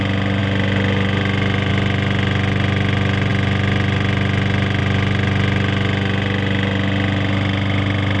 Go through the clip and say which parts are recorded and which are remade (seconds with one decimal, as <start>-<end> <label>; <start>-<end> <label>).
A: 0.0-8.2 recorded